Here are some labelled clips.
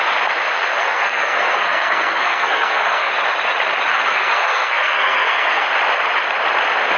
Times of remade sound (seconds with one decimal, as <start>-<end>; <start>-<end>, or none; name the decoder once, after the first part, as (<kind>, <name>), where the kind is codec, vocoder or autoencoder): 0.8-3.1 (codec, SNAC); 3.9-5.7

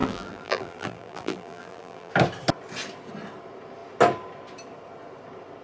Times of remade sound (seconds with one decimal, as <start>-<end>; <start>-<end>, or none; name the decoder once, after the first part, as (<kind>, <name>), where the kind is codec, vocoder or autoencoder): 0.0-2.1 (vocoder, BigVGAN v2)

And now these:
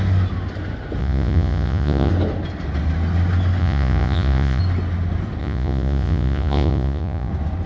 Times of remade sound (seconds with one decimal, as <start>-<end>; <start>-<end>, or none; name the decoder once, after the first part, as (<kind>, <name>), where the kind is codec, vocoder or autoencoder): 1.0-2.1 (vocoder, Vocos); 3.6-4.6; 5.4-7.3